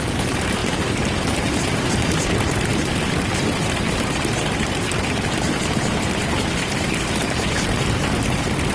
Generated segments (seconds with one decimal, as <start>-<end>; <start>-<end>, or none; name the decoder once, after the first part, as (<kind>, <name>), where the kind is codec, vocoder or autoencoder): 0.6-2.3 (vocoder, BigVGAN v2)